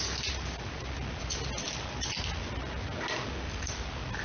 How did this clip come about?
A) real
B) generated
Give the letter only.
A